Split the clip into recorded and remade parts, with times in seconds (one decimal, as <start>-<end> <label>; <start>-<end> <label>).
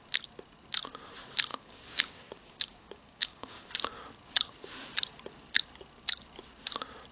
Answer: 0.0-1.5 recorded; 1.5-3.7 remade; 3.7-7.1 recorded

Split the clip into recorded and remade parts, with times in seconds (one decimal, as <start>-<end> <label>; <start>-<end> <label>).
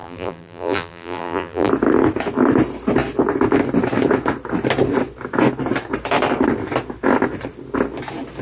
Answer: 0.0-1.7 remade; 1.7-8.4 recorded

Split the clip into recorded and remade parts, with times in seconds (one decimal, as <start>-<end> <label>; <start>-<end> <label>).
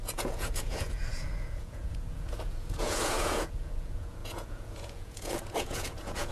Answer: 0.0-6.3 remade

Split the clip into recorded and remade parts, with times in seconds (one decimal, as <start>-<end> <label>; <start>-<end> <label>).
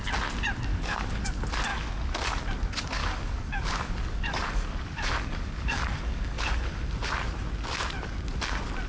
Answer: 0.0-0.7 recorded; 0.7-1.2 remade; 1.2-1.7 recorded; 1.7-2.4 remade; 2.4-3.0 recorded; 3.0-6.6 remade; 6.6-8.9 recorded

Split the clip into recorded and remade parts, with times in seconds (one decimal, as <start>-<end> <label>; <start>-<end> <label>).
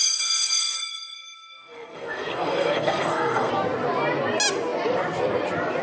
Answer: 0.0-3.5 remade; 3.5-5.8 recorded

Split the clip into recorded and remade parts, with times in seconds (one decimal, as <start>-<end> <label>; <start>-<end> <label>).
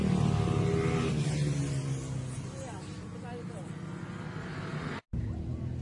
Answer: 0.0-5.8 recorded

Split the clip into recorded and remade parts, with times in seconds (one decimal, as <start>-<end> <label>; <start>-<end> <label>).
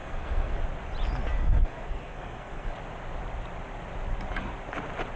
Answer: 0.0-0.6 remade; 0.6-1.4 recorded; 1.4-2.8 remade; 2.8-5.2 recorded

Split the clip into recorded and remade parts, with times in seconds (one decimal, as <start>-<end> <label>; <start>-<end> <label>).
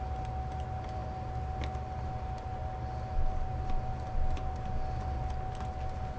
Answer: 0.0-6.2 recorded